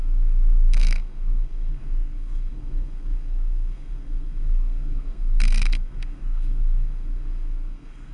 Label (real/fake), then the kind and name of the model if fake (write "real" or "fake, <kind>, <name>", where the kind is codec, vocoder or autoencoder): fake, codec, SNAC